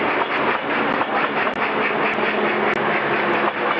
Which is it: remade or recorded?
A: recorded